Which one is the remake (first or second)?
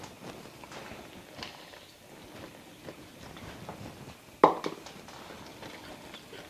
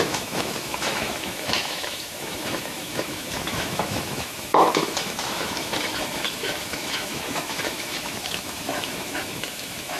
second